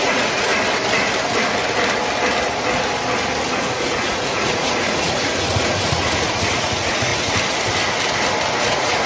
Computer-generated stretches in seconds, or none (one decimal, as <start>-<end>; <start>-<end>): 0.0-0.5; 3.6-7.1; 8.6-9.1